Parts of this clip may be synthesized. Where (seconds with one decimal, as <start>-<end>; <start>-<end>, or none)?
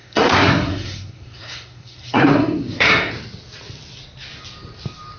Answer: 0.0-3.1